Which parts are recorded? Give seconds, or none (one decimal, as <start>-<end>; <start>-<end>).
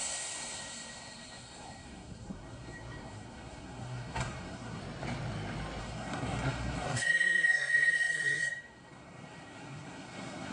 4.8-5.8